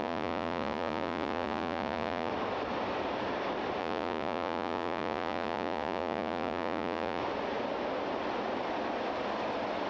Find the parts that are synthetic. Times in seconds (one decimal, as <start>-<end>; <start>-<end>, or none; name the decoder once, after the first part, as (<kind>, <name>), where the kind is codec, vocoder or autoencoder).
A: 0.0-2.3 (vocoder, Vocos); 3.8-7.2